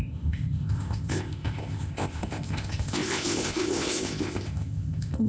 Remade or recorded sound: remade